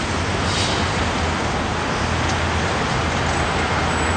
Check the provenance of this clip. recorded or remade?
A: recorded